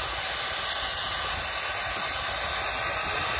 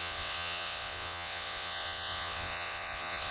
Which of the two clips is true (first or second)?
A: first